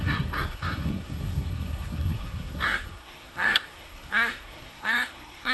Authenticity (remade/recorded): remade